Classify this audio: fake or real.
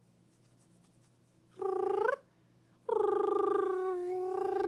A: fake